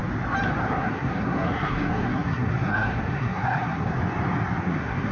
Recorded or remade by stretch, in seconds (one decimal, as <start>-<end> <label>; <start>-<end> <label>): 0.0-0.6 recorded; 0.6-3.9 remade; 3.9-4.6 recorded; 4.6-5.1 remade